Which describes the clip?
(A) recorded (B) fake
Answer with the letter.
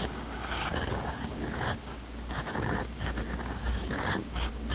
B